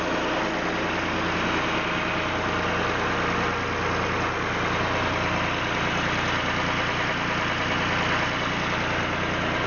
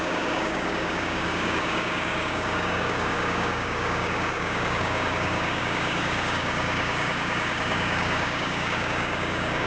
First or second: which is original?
first